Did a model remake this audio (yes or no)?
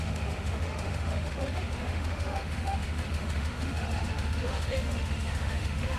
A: yes